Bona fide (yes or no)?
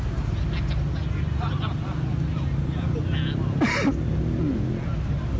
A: yes